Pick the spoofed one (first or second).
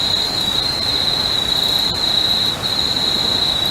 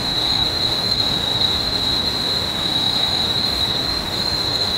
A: second